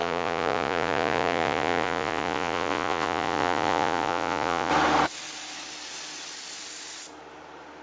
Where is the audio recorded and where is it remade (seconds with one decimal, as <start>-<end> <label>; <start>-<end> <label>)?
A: 0.0-4.7 remade; 4.7-7.8 recorded